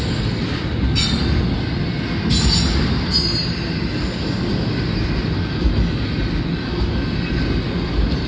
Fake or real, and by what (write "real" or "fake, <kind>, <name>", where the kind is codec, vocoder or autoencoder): real